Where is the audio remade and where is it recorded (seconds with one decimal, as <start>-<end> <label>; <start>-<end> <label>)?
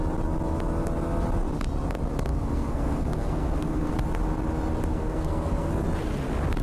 0.0-2.3 recorded; 2.3-3.9 remade; 3.9-4.9 recorded; 4.9-5.7 remade; 5.7-6.6 recorded